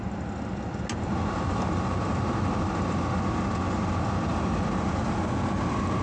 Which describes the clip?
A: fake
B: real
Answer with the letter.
B